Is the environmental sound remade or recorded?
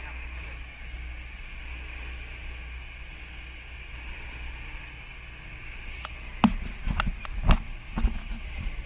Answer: recorded